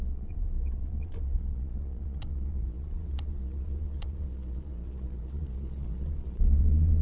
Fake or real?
fake